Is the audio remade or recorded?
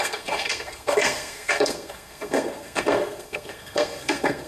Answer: remade